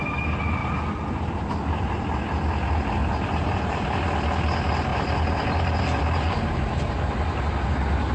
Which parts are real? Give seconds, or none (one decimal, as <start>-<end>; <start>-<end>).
0.0-3.0; 3.9-4.9; 7.4-8.1